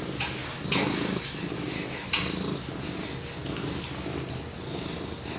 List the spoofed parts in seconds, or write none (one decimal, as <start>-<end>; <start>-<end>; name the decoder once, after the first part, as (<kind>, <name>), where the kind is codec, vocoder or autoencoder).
none